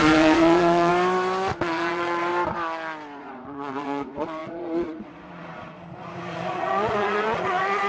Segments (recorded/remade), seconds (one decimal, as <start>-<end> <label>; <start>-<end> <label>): 0.0-0.9 remade; 0.9-1.5 recorded; 1.5-2.3 remade; 2.3-3.2 recorded; 3.2-7.9 remade